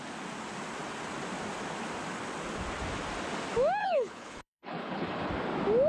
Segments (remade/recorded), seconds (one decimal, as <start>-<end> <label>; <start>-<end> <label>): 0.0-3.8 recorded; 3.8-5.3 remade; 5.3-5.9 recorded